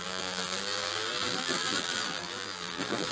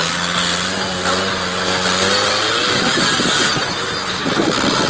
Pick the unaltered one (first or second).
second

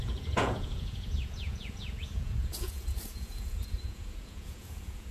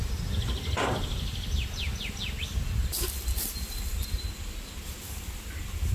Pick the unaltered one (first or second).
second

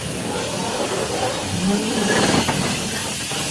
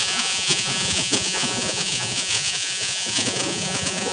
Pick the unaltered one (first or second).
first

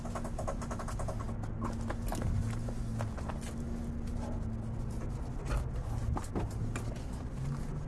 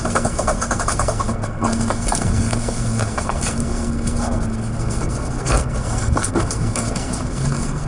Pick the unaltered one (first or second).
first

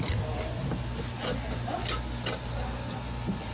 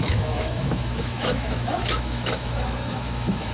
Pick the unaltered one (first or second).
first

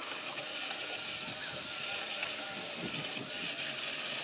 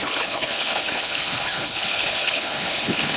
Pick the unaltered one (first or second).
first